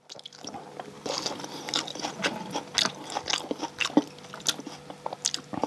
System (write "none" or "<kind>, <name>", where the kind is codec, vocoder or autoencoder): none